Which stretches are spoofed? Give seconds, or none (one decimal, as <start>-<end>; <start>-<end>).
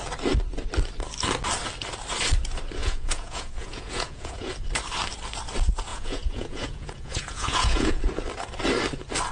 2.8-4.5; 5.9-8.0